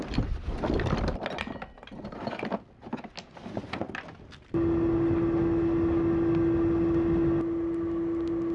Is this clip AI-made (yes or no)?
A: no